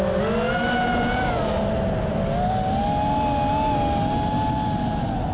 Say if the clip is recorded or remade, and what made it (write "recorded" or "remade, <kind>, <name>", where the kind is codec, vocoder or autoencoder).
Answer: recorded